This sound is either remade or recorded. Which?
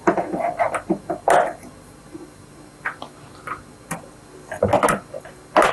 recorded